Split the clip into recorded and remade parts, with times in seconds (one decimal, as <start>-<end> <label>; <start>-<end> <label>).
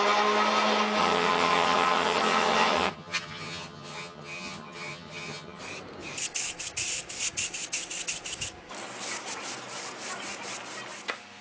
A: 0.0-1.0 recorded; 1.0-5.6 remade; 5.6-11.4 recorded